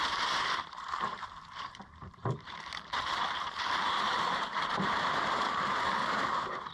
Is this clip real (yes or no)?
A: no